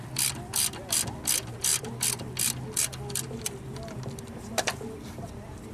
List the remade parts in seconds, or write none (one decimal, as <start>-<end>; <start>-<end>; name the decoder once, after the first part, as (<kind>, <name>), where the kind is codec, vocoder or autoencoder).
none